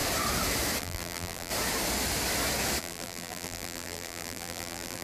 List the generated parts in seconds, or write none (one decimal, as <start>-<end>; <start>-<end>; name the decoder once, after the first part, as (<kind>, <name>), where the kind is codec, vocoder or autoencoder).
0.8-1.5 (vocoder, BigVGAN v2); 2.8-5.0